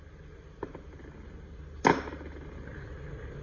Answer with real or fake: real